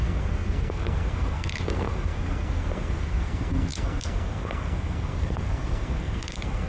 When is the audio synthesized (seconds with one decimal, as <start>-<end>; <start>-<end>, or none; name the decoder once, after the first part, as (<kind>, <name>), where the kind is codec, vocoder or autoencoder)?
0.0-6.7 (codec, SNAC)